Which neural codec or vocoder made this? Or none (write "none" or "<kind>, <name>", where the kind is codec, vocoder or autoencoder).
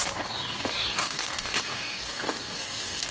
codec, DAC